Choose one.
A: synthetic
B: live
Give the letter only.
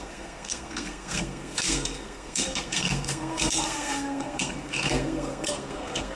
A